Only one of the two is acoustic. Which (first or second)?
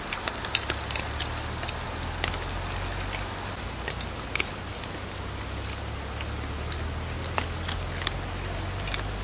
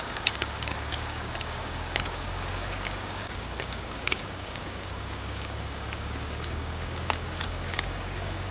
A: first